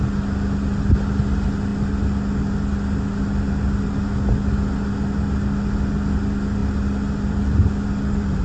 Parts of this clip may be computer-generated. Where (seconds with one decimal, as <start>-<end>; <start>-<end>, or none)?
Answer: none